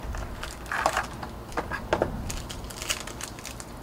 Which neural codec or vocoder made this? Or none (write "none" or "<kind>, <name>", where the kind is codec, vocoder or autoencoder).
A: none